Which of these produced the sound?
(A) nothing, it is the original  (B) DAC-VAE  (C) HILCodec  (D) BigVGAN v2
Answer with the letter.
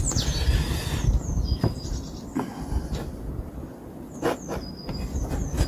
A